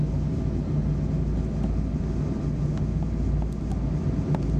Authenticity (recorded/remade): recorded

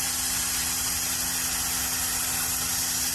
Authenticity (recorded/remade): recorded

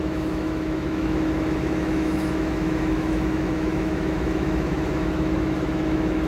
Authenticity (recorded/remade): remade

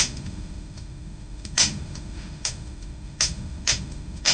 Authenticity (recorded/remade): remade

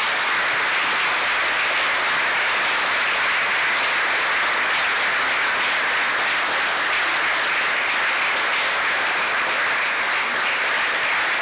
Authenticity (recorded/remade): recorded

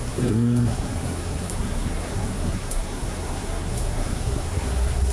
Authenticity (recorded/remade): remade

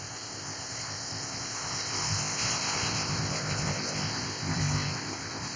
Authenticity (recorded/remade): remade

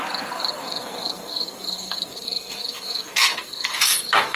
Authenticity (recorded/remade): remade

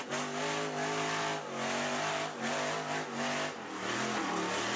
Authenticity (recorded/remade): recorded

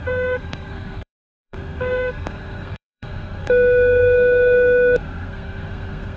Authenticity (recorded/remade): remade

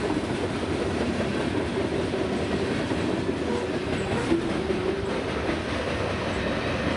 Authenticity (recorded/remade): recorded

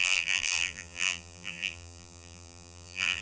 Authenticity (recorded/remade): remade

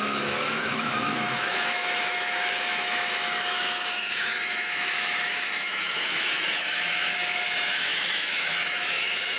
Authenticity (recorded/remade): remade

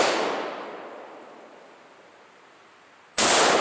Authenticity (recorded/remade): recorded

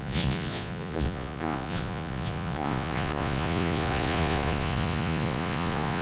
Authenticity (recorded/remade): remade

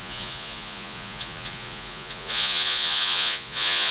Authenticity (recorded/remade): remade